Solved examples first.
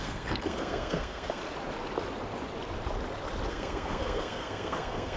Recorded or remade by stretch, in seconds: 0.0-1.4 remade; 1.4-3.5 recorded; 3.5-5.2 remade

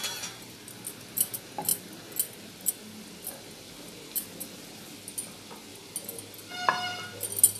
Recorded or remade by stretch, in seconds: 0.0-7.6 recorded

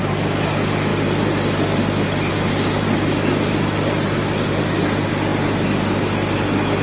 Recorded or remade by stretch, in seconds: 0.0-6.8 recorded